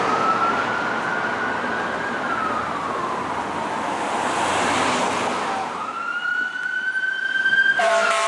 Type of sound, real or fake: real